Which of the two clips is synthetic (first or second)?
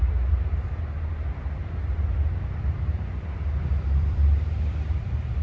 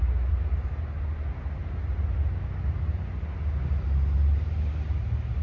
first